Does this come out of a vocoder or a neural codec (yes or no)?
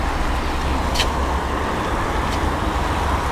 no